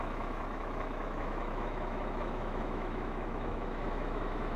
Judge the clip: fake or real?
fake